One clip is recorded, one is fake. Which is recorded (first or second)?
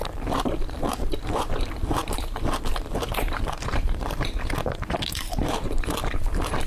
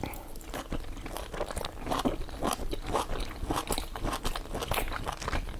second